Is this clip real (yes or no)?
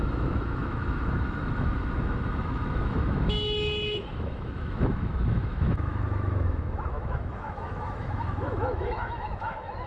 no